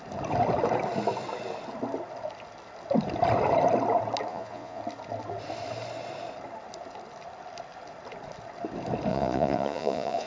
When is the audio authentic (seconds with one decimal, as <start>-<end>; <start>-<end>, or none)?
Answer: 0.0-4.3; 4.8-9.1